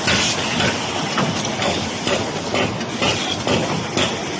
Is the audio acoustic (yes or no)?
yes